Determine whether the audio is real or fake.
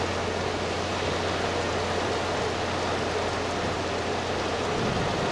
real